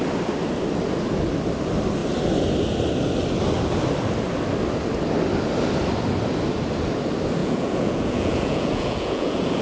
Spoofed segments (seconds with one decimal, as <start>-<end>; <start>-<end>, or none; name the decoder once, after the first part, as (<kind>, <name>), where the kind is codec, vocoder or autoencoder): 7.4-9.6 (vocoder, Vocos)